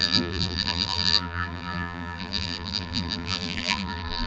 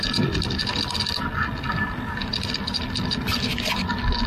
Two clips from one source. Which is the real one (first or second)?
second